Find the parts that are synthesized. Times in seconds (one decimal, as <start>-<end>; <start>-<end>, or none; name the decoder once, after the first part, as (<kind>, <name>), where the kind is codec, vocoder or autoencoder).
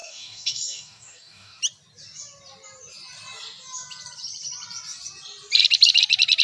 0.0-1.6 (codec, DAC)